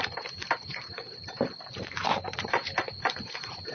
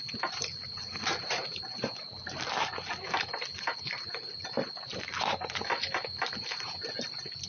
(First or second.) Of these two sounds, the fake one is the first